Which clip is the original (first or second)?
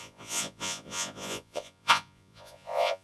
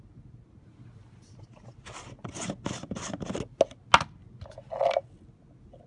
second